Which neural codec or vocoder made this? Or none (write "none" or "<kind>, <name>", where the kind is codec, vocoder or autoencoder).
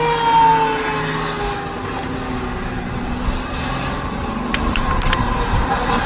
none